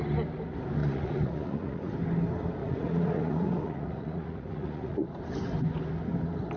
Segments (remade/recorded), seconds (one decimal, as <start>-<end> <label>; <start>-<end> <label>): 0.0-0.8 recorded; 0.8-1.9 remade; 1.9-2.6 recorded; 2.6-5.2 remade; 5.2-6.6 recorded